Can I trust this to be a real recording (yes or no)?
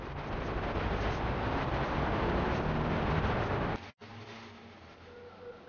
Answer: yes